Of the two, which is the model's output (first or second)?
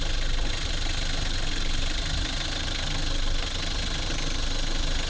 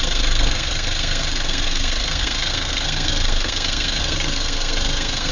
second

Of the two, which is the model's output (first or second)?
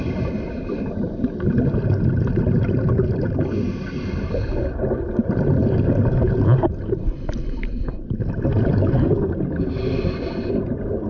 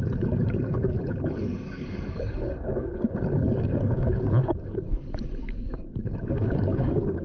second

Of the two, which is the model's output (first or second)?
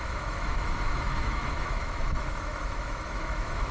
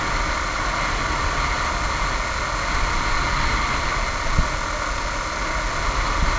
first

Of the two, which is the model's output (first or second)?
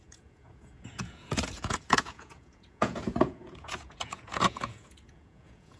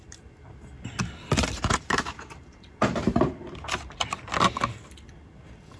first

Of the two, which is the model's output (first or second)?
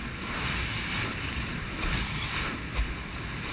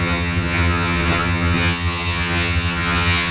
second